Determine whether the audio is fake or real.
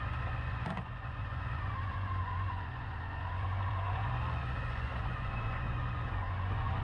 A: fake